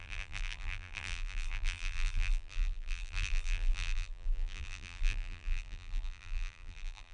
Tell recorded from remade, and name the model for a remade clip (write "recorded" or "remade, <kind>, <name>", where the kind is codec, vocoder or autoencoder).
remade, vocoder, BigVGAN v2